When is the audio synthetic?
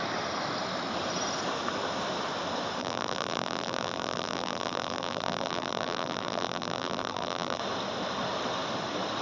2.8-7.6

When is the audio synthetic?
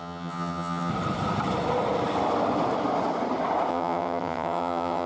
0.0-0.9; 3.7-5.1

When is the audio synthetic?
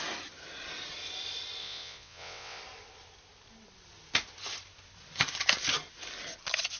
1.6-2.6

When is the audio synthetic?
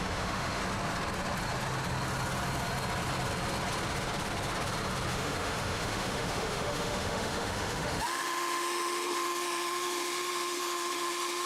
0.0-0.6; 5.1-11.5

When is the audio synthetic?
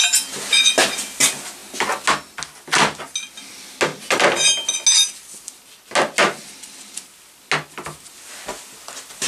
none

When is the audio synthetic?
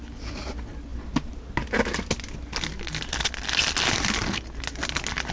none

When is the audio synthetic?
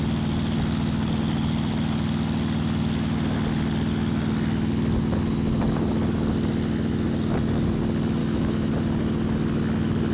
8.2-8.7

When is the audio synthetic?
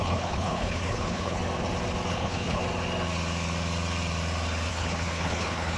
0.0-1.4; 2.1-2.6; 4.7-5.8